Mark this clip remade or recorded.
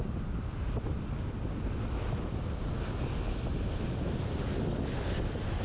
recorded